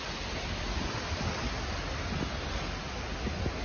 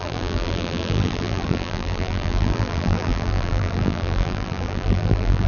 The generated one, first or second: second